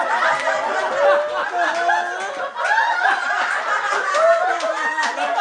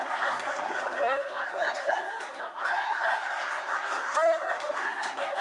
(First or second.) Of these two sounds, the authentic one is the first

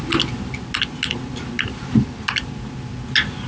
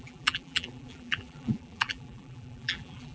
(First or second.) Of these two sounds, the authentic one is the first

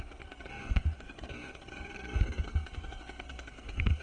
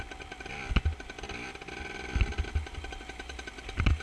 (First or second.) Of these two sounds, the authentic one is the second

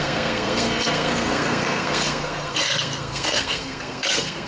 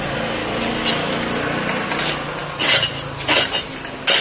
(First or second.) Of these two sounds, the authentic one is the second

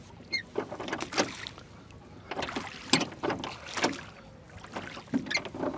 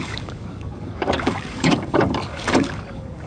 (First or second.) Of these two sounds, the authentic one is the first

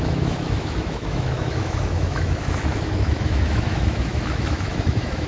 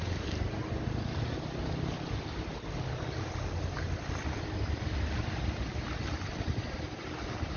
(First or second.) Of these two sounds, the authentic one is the second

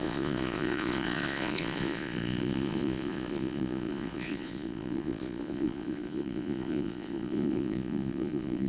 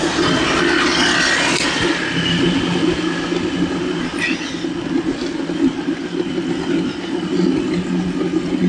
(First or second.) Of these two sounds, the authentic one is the second